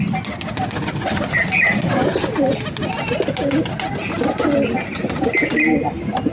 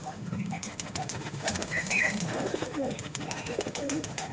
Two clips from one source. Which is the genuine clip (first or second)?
first